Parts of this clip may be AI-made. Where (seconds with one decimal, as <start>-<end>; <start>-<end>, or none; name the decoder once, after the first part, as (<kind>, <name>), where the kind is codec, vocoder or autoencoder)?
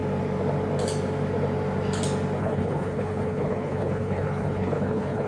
2.4-5.3 (codec, HILCodec)